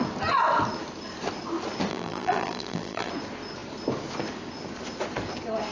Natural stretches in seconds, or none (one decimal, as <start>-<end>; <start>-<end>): 0.0-1.9; 3.1-5.7